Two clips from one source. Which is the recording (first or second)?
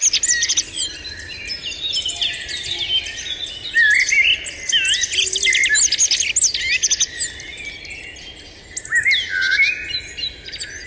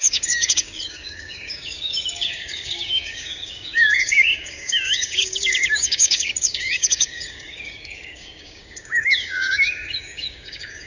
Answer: first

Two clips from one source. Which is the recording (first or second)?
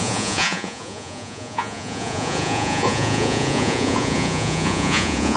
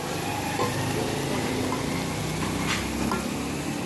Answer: second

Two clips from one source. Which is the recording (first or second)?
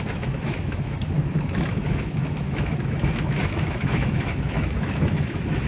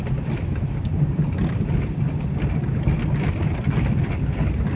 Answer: second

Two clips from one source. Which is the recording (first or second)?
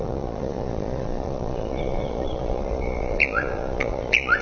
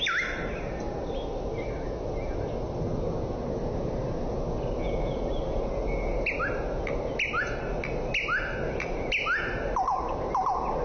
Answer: second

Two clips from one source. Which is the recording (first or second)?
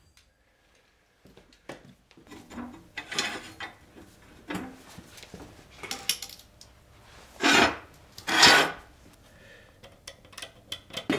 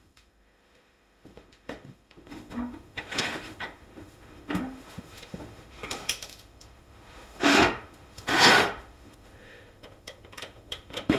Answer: first